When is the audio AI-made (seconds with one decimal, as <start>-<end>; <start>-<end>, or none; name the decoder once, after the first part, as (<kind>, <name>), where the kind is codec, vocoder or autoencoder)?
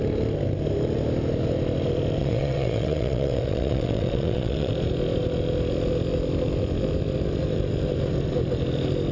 2.2-4.7 (vocoder, WaveNeXt)